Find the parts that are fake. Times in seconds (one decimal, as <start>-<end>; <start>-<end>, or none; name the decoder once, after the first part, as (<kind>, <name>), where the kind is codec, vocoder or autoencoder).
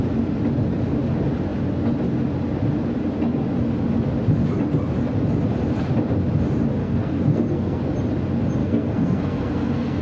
6.8-7.8 (codec, SNAC); 8.6-10.0